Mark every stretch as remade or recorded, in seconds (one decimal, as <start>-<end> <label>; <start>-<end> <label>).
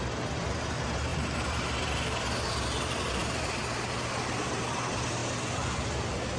0.0-6.4 recorded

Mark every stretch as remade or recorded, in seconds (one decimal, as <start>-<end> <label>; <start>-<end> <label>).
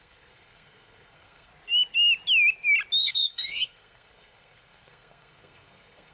0.0-1.5 remade; 1.5-3.0 recorded; 3.0-6.1 remade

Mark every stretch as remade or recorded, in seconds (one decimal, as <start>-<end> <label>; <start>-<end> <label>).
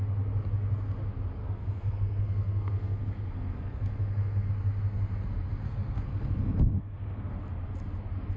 0.0-1.4 recorded; 1.4-4.5 remade; 4.5-5.6 recorded; 5.6-7.4 remade; 7.4-8.4 recorded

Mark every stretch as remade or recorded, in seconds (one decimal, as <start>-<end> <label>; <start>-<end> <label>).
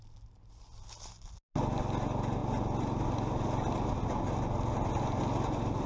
0.0-5.9 recorded